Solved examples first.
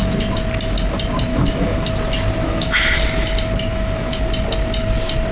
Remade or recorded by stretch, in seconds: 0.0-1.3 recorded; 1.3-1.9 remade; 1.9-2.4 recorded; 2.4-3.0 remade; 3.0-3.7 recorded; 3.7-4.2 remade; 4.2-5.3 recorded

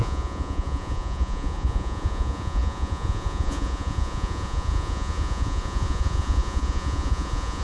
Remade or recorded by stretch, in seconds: 0.0-7.6 remade

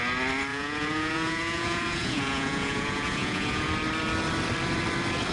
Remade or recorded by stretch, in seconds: 0.0-0.5 recorded; 0.5-3.7 remade; 3.7-5.3 recorded

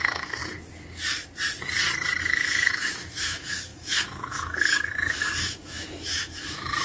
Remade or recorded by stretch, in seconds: 0.0-0.4 remade; 0.4-2.2 recorded; 2.2-6.8 remade

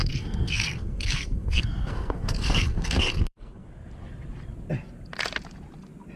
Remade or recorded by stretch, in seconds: 0.0-3.7 remade; 3.7-6.2 recorded

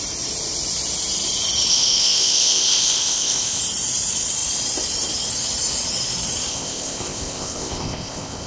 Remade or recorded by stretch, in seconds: 0.0-1.7 recorded; 1.7-3.6 remade; 3.6-6.5 recorded; 6.5-8.5 remade

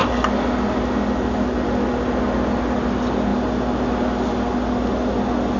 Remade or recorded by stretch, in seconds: 0.0-5.6 recorded

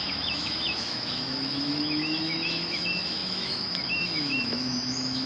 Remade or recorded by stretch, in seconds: 0.0-5.3 remade